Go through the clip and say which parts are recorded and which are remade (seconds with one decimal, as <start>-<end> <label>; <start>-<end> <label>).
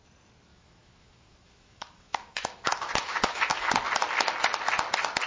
0.0-0.5 recorded; 0.5-3.7 remade; 3.7-5.3 recorded